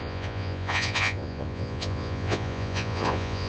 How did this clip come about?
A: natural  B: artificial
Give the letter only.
B